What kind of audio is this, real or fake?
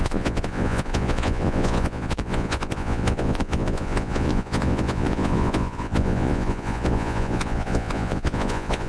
fake